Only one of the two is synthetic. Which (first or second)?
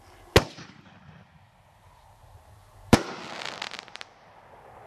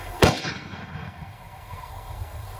second